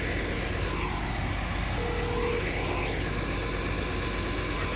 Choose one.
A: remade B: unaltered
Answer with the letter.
B